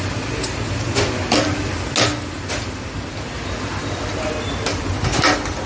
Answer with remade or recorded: recorded